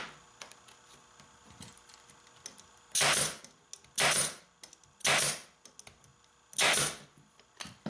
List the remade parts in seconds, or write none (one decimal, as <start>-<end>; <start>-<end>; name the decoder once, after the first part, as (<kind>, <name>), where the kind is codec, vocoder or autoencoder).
none